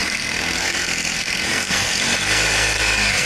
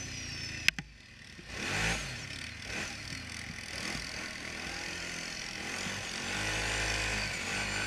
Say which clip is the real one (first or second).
second